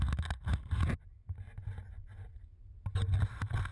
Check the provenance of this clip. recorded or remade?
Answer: recorded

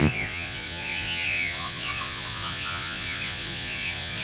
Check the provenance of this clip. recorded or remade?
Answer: remade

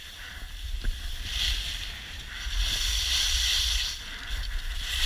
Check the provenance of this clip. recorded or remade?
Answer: recorded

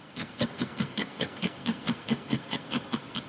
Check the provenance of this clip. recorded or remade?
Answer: remade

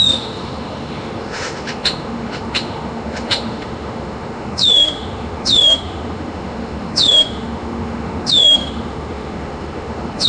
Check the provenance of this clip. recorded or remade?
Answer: remade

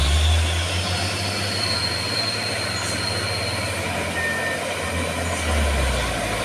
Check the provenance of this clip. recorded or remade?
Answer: recorded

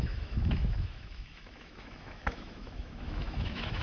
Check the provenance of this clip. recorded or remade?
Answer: remade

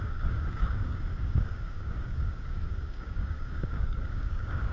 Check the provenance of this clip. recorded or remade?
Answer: remade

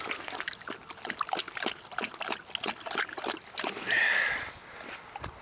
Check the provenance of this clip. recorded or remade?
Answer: recorded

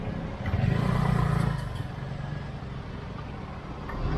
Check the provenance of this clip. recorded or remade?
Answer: recorded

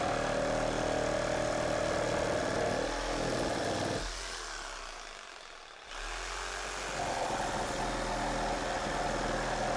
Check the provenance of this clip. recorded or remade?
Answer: recorded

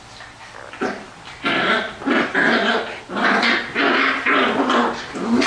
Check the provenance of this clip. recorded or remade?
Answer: recorded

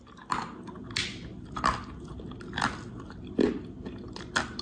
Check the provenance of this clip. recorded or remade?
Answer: recorded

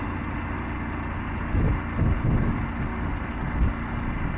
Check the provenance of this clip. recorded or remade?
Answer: recorded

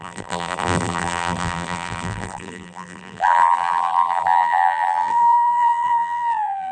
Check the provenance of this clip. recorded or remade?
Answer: remade